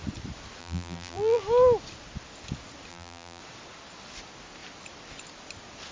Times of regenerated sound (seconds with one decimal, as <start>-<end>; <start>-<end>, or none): 0.6-1.4; 2.9-3.4